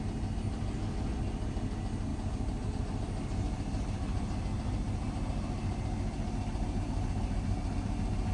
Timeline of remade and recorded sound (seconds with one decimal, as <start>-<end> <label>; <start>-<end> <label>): 0.0-8.3 recorded